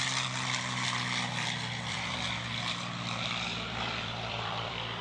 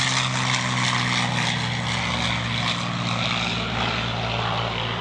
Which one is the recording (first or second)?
second